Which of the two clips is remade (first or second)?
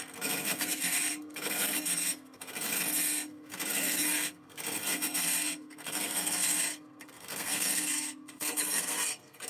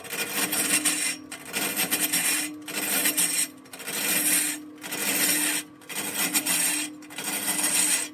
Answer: first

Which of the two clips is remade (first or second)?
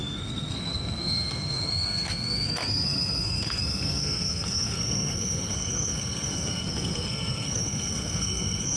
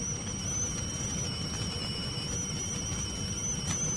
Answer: first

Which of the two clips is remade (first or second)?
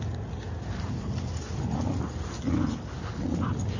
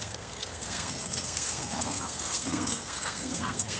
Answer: second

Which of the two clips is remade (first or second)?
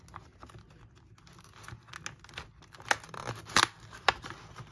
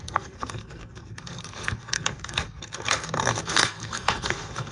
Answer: second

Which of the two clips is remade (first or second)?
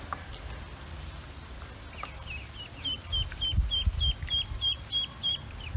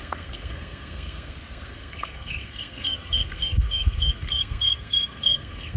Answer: second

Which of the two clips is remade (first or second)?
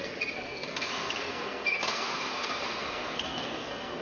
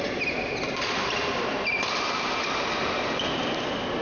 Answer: first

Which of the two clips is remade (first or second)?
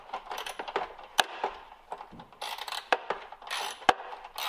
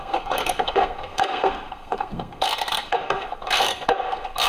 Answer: second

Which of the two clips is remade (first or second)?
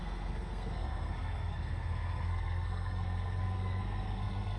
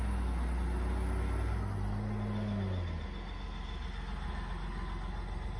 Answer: first